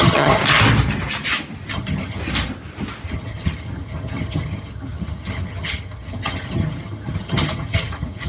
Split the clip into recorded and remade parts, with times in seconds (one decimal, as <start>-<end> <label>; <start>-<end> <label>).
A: 0.0-0.4 remade; 0.4-1.7 recorded; 1.7-2.2 remade; 2.2-3.1 recorded; 3.1-8.3 remade